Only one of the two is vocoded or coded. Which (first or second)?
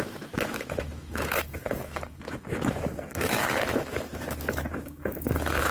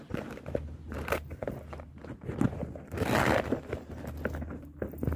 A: first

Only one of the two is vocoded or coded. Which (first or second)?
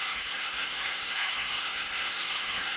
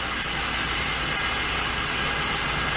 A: first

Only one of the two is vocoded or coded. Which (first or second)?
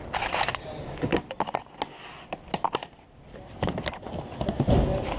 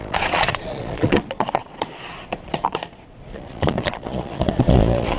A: second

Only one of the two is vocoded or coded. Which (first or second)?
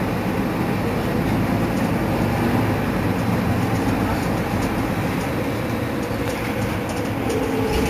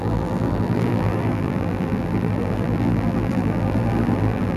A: second